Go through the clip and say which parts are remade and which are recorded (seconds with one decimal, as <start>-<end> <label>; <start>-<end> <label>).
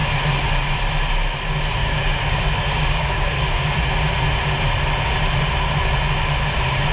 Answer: 0.0-1.8 recorded; 1.8-3.8 remade; 3.8-6.9 recorded